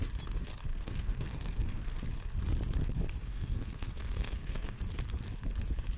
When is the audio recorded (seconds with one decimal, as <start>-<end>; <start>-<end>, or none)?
0.0-0.7; 2.0-3.3; 4.8-6.0